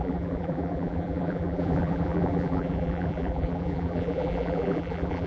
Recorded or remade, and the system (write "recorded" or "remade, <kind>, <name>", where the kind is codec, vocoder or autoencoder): remade, vocoder, BigVGAN v2